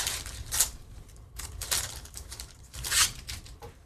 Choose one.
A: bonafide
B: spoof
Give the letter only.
B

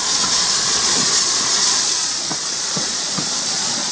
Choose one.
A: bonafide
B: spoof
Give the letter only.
B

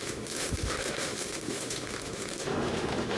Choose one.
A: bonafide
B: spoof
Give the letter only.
B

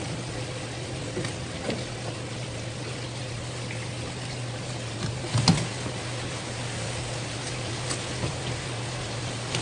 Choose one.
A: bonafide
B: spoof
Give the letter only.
A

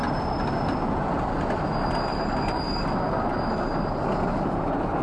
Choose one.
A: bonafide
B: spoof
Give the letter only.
A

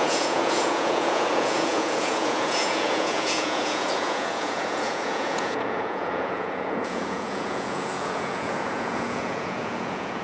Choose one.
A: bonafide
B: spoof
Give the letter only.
B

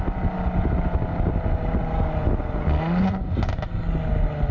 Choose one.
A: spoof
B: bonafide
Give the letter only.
B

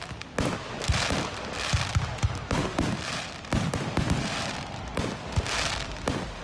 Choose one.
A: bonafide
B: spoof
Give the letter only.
A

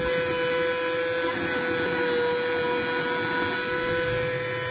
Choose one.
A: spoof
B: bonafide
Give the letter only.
B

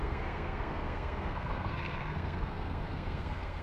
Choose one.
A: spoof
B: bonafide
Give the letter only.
A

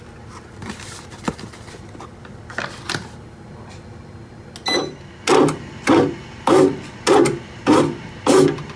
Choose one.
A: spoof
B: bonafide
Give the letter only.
B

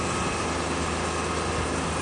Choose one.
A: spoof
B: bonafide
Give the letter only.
B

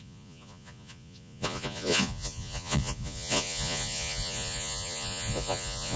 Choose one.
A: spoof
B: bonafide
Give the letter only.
A